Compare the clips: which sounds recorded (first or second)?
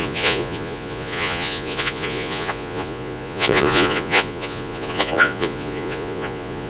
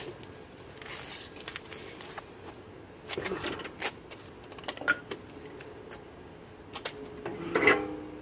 second